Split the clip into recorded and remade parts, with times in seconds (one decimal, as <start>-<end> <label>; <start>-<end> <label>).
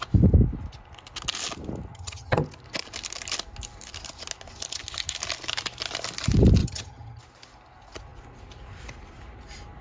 0.0-1.9 recorded; 1.9-2.4 remade; 2.4-6.6 recorded; 6.6-7.2 remade; 7.2-9.8 recorded